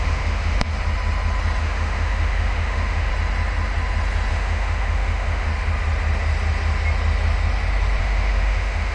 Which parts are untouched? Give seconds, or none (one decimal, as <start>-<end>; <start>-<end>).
0.7-1.6; 3.1-4.3; 5.5-8.0